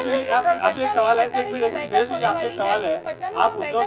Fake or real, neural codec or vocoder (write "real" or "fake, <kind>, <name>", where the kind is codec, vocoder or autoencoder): fake, vocoder, BigVGAN v2